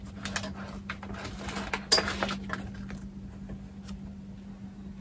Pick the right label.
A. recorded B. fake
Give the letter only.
A